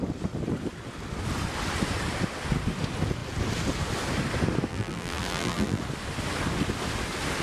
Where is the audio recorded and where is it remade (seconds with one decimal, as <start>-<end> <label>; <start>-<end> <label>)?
0.0-4.7 recorded; 4.7-5.8 remade; 5.8-7.4 recorded